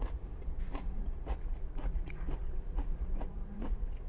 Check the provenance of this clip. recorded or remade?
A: remade